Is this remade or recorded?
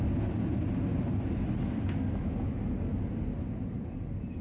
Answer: recorded